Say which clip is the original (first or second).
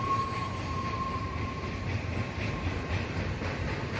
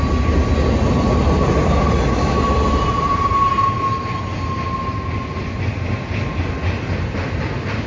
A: second